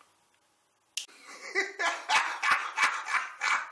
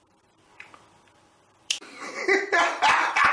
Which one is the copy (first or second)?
second